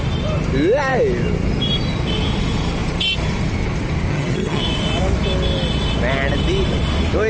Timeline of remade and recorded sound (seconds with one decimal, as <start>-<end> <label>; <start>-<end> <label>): 0.0-4.1 recorded; 4.1-4.6 remade; 4.6-7.3 recorded

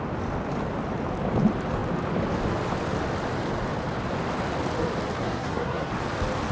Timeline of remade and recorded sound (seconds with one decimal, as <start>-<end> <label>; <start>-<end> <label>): 0.0-5.2 recorded; 5.2-5.9 remade; 5.9-6.5 recorded

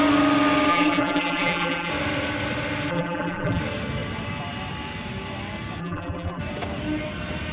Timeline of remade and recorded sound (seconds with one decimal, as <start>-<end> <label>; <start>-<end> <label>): 0.0-0.7 recorded; 0.7-1.9 remade; 1.9-2.9 recorded; 2.9-3.6 remade; 3.6-5.8 recorded; 5.8-6.4 remade; 6.4-7.5 recorded

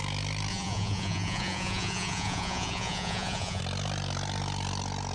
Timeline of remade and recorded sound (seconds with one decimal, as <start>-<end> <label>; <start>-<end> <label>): 0.0-0.5 recorded; 0.5-3.6 remade; 3.6-5.1 recorded

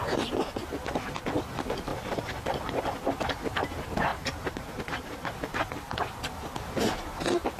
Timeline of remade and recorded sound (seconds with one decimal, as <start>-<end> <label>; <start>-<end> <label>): 0.0-1.9 recorded; 1.9-2.8 remade; 2.8-4.1 recorded; 4.1-5.3 remade; 5.3-7.6 recorded